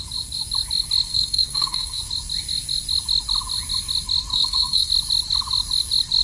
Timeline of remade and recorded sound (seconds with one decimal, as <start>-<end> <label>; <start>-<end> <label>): 0.0-1.1 recorded; 1.1-2.0 remade; 2.0-4.3 recorded; 4.3-4.9 remade; 4.9-6.2 recorded